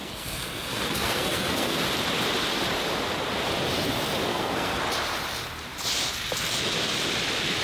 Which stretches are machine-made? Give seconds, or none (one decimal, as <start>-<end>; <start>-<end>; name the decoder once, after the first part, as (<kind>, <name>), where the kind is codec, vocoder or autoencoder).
0.0-1.8 (codec, SNAC); 4.3-4.8